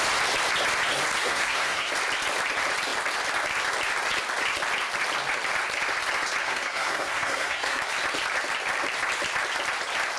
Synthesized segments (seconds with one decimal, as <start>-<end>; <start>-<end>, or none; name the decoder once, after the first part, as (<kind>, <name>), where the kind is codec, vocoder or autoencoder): 1.2-1.9 (codec, SNAC); 6.4-7.8